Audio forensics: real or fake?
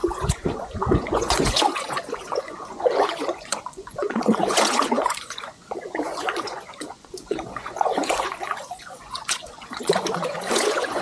fake